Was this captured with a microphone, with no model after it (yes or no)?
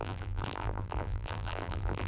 no